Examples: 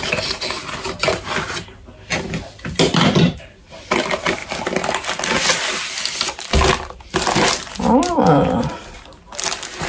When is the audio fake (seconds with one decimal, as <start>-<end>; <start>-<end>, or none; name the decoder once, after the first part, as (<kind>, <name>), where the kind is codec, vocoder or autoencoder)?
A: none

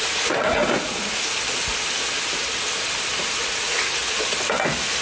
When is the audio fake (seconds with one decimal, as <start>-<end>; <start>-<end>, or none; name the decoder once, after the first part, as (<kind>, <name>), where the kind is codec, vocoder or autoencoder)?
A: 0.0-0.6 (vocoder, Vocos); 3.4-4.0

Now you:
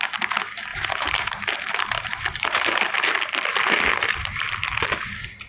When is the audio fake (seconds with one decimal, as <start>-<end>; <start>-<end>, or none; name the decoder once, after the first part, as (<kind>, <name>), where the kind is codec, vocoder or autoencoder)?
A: 0.7-2.8 (vocoder, BigVGAN v2)